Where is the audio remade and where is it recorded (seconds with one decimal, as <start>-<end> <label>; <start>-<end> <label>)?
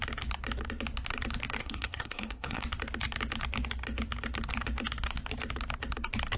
0.0-1.6 recorded; 1.6-2.6 remade; 2.6-6.4 recorded